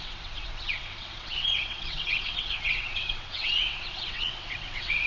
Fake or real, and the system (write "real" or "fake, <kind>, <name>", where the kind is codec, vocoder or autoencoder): fake, vocoder, WaveNeXt